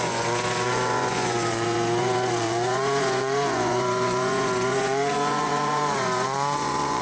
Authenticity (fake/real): fake